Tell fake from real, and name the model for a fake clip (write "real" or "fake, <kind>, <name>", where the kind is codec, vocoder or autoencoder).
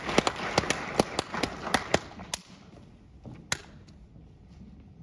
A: real